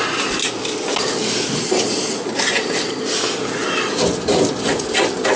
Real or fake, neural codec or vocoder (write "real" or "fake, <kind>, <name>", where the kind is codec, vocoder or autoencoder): real